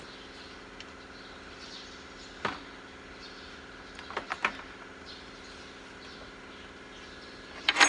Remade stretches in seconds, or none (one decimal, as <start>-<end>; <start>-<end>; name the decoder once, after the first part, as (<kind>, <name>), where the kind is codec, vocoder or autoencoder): none